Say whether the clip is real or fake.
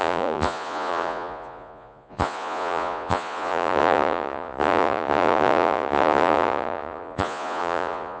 fake